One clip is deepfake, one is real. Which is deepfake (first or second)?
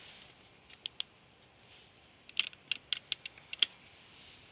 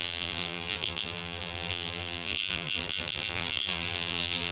second